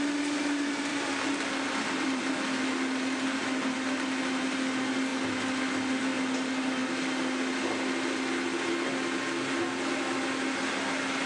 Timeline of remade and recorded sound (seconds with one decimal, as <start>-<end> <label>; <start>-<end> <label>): 0.0-0.9 recorded; 0.9-2.2 remade; 2.2-11.3 recorded